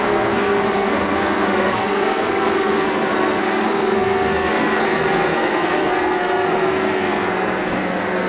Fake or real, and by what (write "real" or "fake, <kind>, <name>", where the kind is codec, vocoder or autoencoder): fake, codec, SNAC